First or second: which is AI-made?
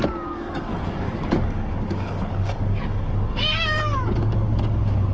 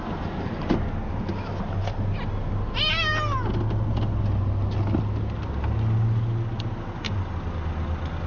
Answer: first